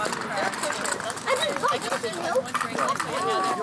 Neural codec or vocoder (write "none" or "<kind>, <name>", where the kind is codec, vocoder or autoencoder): none